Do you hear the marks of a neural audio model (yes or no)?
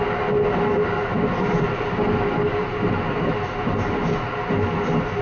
no